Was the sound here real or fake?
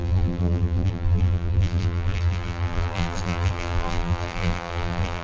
fake